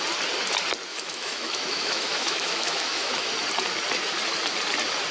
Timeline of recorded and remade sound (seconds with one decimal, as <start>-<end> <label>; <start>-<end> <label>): 0.0-0.9 recorded; 0.9-3.3 remade; 3.3-5.1 recorded